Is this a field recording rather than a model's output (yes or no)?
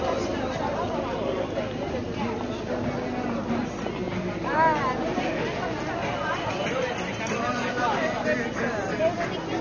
yes